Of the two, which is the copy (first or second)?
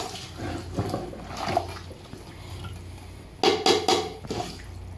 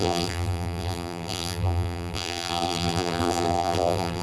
second